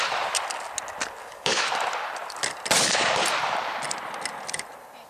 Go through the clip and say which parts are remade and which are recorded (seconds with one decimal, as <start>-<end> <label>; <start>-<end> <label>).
0.0-1.2 recorded; 1.2-1.7 remade; 1.7-5.1 recorded

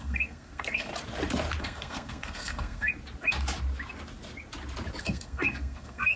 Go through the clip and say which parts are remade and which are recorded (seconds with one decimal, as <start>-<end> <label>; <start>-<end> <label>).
0.0-0.9 remade; 0.9-1.6 recorded; 1.6-2.9 remade; 2.9-5.0 recorded; 5.0-6.2 remade

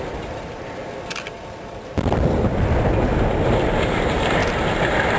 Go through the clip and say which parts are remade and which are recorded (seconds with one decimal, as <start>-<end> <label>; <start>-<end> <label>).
0.0-0.8 remade; 0.8-3.7 recorded; 3.7-5.2 remade

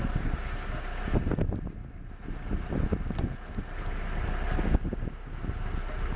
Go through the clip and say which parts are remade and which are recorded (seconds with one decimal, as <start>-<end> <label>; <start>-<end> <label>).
0.0-6.2 recorded

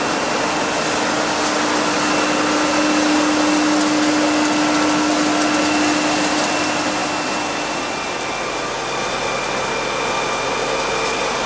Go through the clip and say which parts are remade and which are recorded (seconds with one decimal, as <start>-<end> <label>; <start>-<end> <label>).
0.0-11.5 recorded

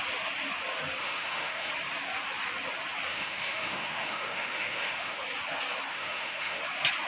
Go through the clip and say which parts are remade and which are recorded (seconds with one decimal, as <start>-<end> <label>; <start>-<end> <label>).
0.0-1.0 recorded; 1.0-1.7 remade; 1.7-3.1 recorded; 3.1-5.2 remade; 5.2-5.9 recorded; 5.9-6.6 remade; 6.6-7.1 recorded

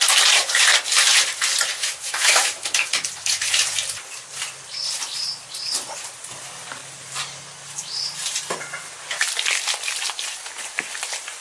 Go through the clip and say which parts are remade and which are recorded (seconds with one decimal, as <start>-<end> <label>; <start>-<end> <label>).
0.0-1.8 recorded; 1.8-2.9 remade; 2.9-11.4 recorded

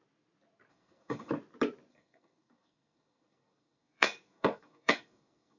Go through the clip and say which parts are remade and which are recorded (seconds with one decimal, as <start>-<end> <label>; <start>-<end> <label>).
0.0-0.7 recorded; 0.7-1.3 remade; 1.3-1.9 recorded; 1.9-5.6 remade